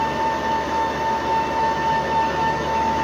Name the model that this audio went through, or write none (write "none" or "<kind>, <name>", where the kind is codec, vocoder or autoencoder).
autoencoder, DAC-VAE